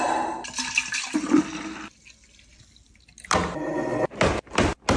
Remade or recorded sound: recorded